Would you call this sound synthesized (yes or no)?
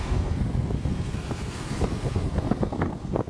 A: yes